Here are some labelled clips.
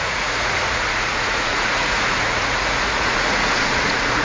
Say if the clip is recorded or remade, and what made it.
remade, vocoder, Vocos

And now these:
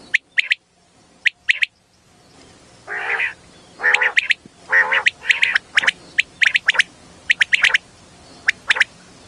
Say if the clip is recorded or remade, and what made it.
recorded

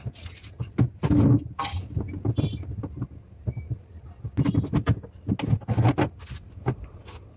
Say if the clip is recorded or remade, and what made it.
recorded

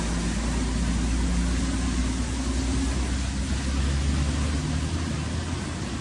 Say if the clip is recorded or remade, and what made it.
recorded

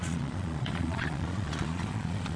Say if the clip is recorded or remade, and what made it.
remade, vocoder, Vocos